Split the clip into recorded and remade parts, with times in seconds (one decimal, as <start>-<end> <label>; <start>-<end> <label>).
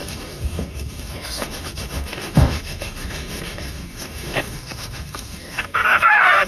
0.0-6.5 remade